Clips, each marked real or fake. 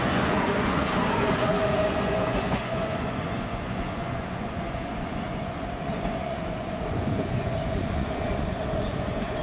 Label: fake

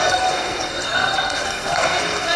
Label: fake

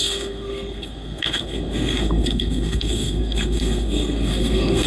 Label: fake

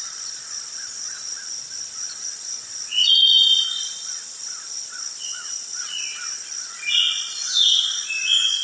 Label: fake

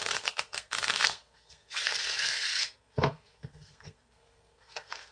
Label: fake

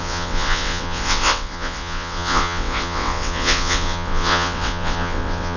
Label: fake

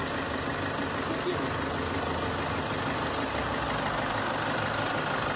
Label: real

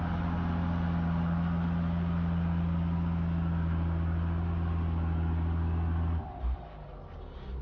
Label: real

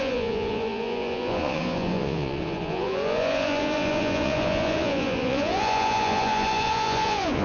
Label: fake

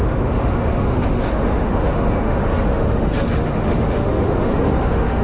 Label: fake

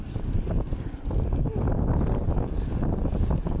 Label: real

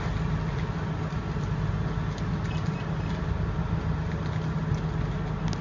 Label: real